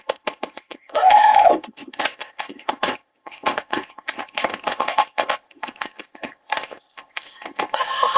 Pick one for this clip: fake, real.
fake